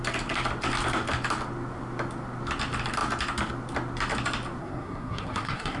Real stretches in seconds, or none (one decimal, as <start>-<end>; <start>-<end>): 0.0-4.6